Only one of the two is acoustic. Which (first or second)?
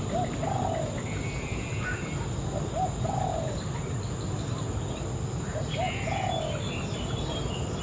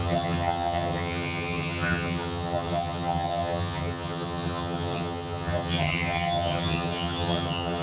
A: first